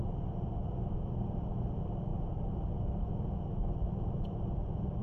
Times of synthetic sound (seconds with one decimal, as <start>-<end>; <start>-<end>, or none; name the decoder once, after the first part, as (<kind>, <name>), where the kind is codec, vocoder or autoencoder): 0.0-5.0 (vocoder, BigVGAN v2)